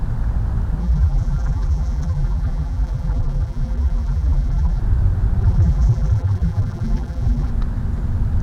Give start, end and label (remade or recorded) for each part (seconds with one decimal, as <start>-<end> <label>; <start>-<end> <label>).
0.0-0.8 recorded; 0.8-4.8 remade; 4.8-5.4 recorded; 5.4-7.5 remade; 7.5-8.4 recorded